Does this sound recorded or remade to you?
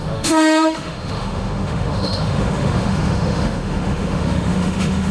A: remade